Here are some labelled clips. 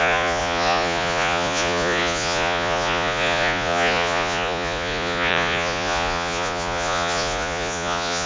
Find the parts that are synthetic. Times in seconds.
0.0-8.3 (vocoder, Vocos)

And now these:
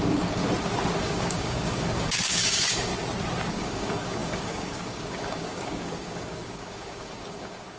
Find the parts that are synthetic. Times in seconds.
0.0-0.4 (codec, DAC); 1.0-2.9; 3.5-7.8

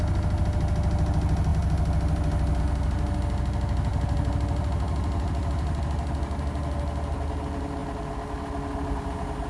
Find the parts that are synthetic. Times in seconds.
none

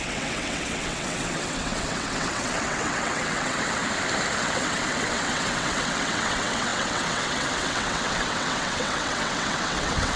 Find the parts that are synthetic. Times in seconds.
0.0-3.8 (vocoder, WaveNeXt); 4.4-10.2